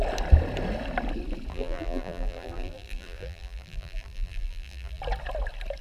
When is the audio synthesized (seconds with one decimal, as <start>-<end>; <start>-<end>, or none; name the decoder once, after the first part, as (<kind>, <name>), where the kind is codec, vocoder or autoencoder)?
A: 1.5-5.0 (vocoder, BigVGAN v2)